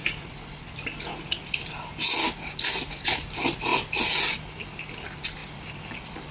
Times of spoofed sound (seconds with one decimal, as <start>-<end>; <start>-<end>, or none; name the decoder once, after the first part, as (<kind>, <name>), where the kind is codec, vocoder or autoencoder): none